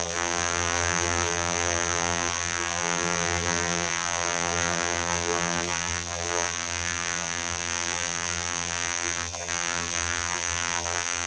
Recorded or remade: remade